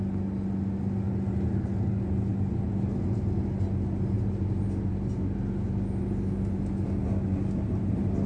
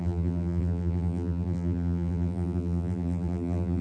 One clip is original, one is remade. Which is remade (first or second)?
second